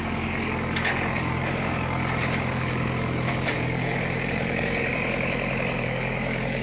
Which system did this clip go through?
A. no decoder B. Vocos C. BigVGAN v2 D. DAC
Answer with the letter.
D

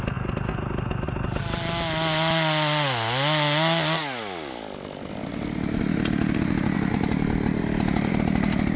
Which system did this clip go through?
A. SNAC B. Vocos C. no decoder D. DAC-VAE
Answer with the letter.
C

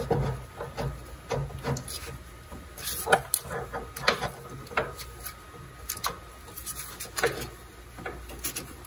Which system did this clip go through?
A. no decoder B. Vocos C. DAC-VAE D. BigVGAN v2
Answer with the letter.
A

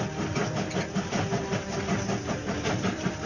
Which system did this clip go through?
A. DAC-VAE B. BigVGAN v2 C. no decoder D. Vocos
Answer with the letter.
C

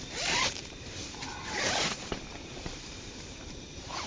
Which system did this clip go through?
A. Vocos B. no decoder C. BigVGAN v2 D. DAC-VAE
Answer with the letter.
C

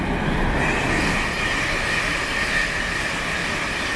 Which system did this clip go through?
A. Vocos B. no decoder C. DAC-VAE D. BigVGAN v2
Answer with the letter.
B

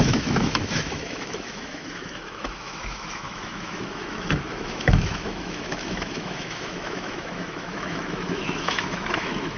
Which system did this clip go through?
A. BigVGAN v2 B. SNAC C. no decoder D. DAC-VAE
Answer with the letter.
D